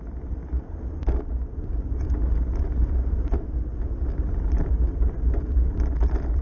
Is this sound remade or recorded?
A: recorded